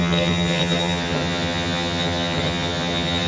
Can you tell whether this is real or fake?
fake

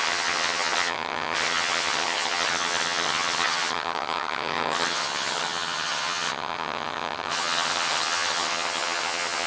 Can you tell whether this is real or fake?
fake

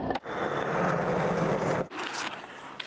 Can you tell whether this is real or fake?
real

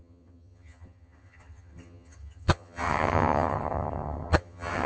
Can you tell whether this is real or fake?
fake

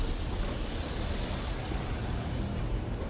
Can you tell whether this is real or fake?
real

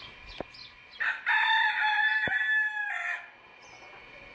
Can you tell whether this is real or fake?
real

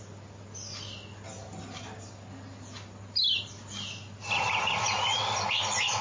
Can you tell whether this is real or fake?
real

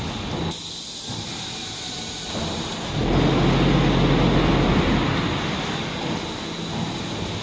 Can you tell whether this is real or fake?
real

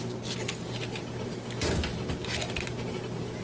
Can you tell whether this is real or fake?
real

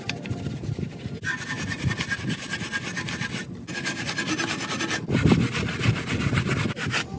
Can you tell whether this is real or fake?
real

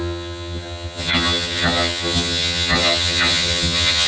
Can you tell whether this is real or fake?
fake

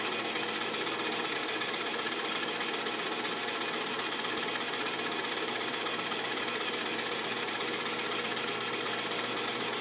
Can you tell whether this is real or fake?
real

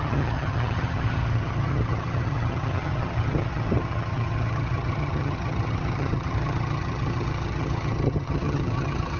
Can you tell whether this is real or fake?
fake